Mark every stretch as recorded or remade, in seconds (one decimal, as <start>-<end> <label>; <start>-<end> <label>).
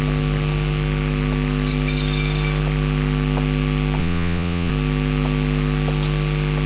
0.0-4.0 recorded; 4.0-4.7 remade; 4.7-6.7 recorded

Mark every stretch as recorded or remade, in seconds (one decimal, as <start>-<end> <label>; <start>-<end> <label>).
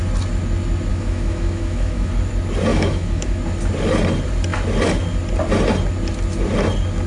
0.0-0.9 recorded; 0.9-2.1 remade; 2.1-2.7 recorded; 2.7-3.4 remade; 3.4-7.1 recorded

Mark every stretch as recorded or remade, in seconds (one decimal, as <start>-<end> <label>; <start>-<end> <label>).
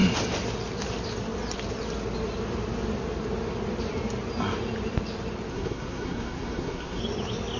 0.0-5.5 recorded; 5.5-7.0 remade; 7.0-7.6 recorded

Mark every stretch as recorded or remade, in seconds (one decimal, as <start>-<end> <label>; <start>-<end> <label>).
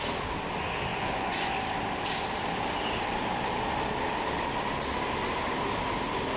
0.0-0.9 recorded; 0.9-1.5 remade; 1.5-6.4 recorded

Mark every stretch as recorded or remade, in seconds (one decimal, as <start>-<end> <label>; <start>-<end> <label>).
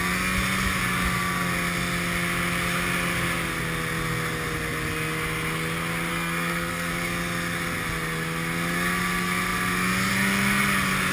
0.0-6.1 recorded; 6.1-6.9 remade; 6.9-11.1 recorded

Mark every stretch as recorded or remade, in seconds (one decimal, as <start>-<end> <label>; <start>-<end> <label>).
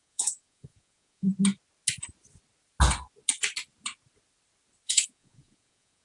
0.0-1.3 remade; 1.3-4.9 recorded; 4.9-6.0 remade